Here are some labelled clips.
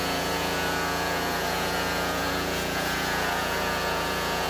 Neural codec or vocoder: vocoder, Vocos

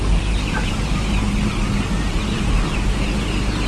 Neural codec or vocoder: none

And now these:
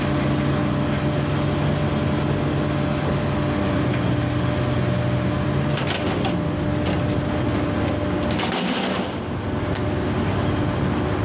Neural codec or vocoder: none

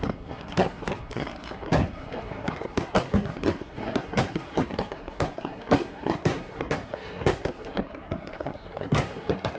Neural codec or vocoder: codec, SNAC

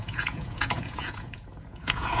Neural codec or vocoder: vocoder, Vocos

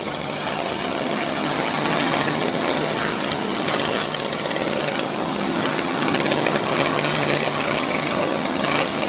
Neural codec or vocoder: vocoder, HiFi-GAN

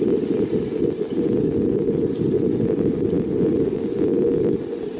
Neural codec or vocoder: none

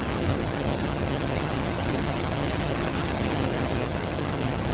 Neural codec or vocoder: vocoder, HiFi-GAN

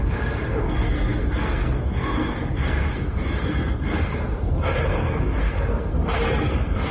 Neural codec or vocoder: codec, SNAC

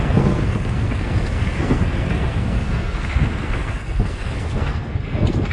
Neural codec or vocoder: codec, SNAC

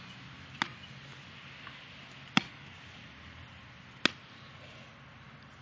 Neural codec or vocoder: none